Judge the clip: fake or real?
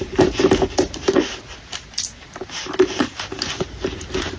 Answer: fake